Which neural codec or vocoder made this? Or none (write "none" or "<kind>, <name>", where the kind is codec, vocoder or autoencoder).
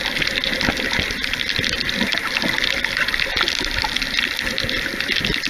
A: none